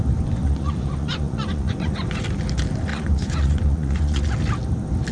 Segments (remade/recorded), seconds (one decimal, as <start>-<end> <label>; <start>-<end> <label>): 0.0-0.4 recorded; 0.4-2.2 remade; 2.2-2.9 recorded; 2.9-4.3 remade; 4.3-5.1 recorded